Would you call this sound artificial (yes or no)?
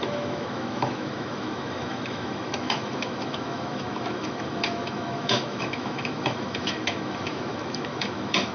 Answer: yes